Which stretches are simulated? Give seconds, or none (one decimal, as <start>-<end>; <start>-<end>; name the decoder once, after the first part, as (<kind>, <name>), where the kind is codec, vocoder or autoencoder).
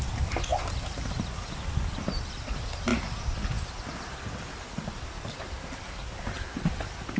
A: none